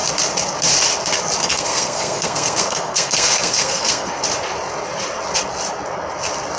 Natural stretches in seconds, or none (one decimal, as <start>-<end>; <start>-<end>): 0.0-1.4; 4.2-6.6